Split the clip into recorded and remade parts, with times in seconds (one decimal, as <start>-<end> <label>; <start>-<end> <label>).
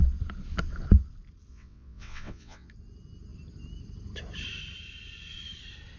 0.0-1.5 recorded; 1.5-2.7 remade; 2.7-6.0 recorded